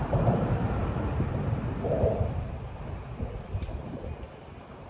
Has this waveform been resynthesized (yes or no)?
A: yes